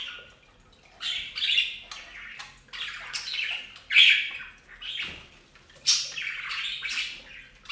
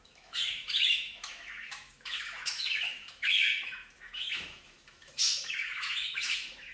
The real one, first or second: first